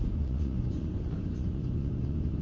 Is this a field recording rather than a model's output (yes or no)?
no